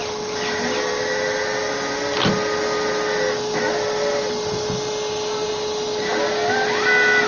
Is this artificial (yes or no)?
no